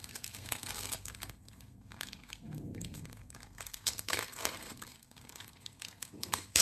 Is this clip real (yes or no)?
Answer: no